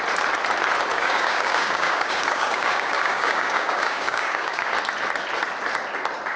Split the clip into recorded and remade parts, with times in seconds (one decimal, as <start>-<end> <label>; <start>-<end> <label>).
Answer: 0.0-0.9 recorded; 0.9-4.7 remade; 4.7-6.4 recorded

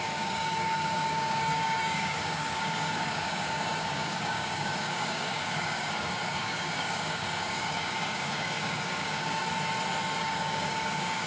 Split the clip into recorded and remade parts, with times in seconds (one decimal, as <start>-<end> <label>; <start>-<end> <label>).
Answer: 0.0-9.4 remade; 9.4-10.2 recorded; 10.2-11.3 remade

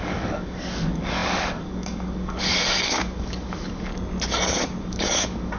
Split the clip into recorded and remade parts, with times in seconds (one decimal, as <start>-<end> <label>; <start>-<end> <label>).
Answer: 0.0-3.9 remade; 3.9-4.8 recorded; 4.8-5.6 remade

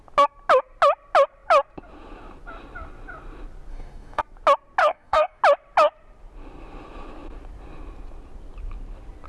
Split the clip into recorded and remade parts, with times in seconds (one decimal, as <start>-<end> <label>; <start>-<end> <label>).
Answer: 0.0-3.7 recorded; 3.7-4.2 remade; 4.2-4.8 recorded; 4.8-5.4 remade; 5.4-9.3 recorded

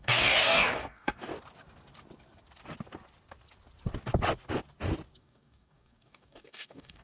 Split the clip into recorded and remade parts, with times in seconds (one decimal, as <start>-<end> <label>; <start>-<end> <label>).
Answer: 0.0-1.3 remade; 1.3-5.2 recorded; 5.2-7.0 remade

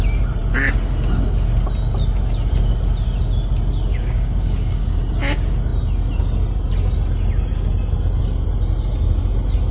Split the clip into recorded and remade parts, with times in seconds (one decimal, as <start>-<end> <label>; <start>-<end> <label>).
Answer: 0.0-3.9 recorded; 3.9-5.0 remade; 5.0-9.7 recorded

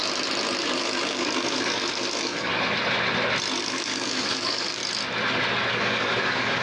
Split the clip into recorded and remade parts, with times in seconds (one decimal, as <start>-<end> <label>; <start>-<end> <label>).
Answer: 0.0-0.6 recorded; 0.6-2.5 remade; 2.5-3.6 recorded; 3.6-4.8 remade; 4.8-5.7 recorded; 5.7-6.6 remade

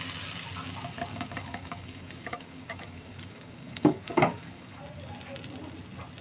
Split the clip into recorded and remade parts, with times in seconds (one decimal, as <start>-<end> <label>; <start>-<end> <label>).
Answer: 0.0-1.1 recorded; 1.1-4.8 remade; 4.8-6.2 recorded